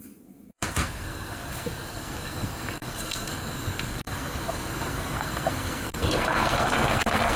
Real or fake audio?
fake